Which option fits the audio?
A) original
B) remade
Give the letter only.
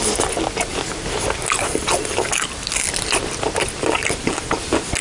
A